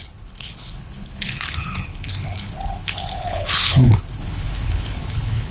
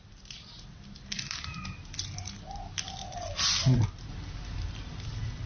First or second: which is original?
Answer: second